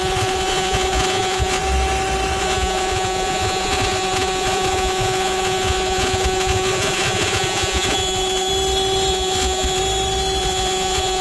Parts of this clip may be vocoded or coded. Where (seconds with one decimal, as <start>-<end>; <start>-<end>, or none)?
0.0-1.6; 2.4-8.5; 9.1-9.8; 10.4-11.2